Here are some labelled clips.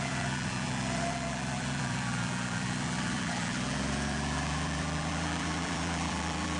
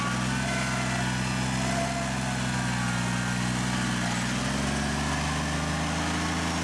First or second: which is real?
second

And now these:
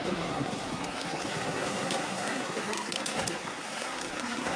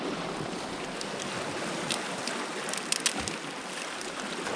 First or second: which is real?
second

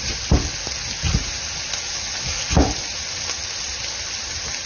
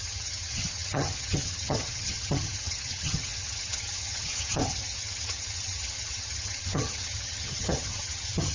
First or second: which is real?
first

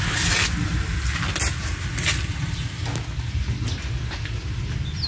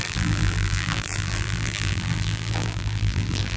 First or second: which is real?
first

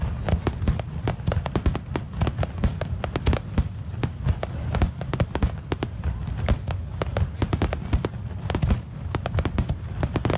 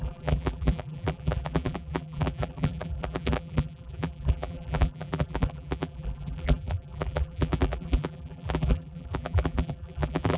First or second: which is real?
first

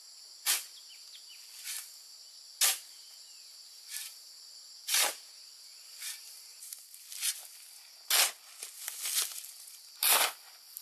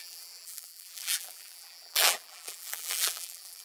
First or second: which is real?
first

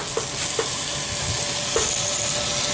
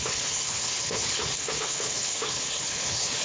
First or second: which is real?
first